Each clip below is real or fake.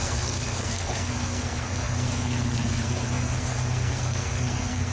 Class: fake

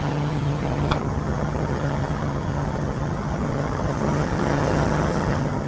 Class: fake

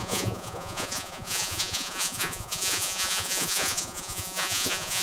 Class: fake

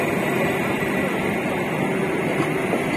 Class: real